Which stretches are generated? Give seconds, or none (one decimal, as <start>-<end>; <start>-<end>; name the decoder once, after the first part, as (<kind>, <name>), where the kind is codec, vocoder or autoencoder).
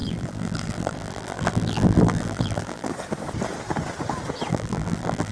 0.0-2.9 (vocoder, BigVGAN v2); 4.5-5.3